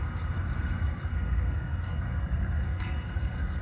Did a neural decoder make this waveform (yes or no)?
yes